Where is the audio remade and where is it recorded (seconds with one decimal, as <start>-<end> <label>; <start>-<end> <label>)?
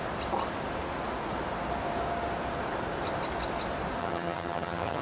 0.0-4.0 recorded; 4.0-5.0 remade